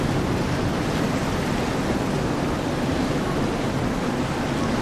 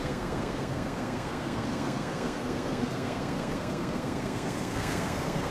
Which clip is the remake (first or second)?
second